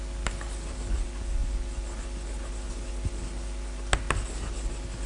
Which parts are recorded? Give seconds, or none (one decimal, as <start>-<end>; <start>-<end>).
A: 0.0-5.1